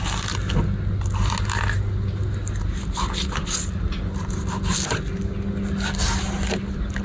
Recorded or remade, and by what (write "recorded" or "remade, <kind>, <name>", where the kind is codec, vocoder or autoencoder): recorded